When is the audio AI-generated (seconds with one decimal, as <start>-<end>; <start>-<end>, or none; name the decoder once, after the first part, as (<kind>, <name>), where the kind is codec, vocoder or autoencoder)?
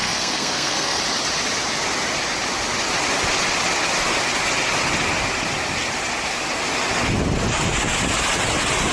0.0-1.0 (codec, SNAC)